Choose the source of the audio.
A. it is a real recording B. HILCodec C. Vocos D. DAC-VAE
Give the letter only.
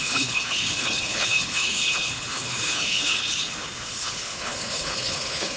B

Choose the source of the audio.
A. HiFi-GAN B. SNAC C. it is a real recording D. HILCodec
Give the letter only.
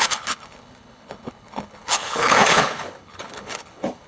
D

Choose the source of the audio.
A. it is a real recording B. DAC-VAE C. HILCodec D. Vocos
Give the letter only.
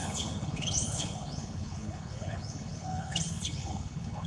C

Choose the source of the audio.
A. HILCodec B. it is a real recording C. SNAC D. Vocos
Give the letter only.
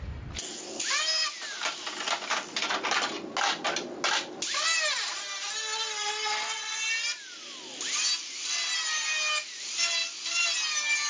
B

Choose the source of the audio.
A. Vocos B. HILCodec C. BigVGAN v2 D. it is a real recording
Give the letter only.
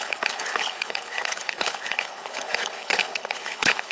B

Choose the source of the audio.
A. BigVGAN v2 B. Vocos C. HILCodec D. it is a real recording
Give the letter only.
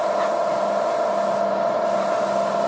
D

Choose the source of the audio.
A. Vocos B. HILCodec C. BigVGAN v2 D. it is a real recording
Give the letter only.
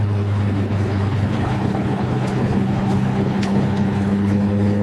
B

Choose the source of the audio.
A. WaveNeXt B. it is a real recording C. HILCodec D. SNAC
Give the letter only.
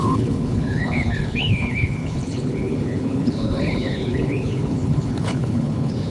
C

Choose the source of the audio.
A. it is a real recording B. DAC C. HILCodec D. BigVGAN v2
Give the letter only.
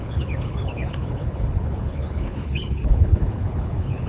C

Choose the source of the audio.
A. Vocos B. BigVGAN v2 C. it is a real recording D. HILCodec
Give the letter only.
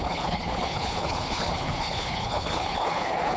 D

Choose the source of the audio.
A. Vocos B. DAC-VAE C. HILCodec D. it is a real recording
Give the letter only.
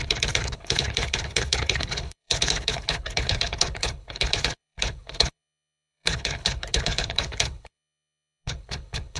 C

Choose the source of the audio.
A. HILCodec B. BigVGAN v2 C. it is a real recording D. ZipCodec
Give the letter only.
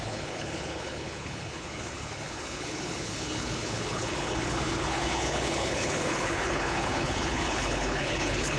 A